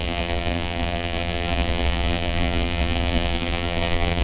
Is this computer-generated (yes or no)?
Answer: yes